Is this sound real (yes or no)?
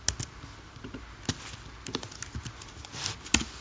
yes